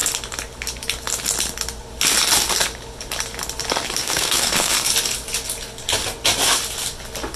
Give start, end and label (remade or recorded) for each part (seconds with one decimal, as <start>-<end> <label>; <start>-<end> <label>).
0.0-4.0 recorded; 4.0-4.9 remade; 4.9-7.4 recorded